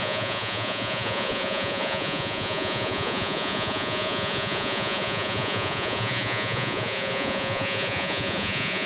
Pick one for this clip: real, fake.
fake